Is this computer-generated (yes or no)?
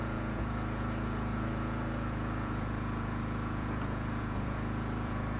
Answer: yes